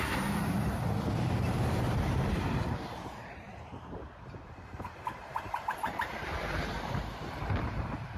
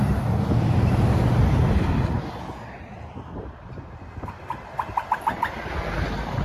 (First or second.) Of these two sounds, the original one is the second